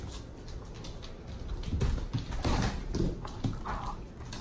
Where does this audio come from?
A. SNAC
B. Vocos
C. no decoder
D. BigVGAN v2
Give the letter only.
C